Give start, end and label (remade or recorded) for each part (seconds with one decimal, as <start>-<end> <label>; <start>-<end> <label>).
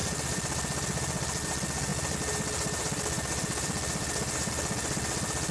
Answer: 0.0-5.5 recorded